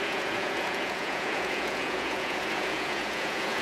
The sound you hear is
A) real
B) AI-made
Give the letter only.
B